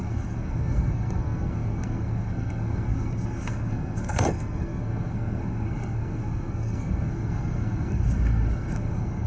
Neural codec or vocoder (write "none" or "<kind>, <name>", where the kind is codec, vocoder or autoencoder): codec, SNAC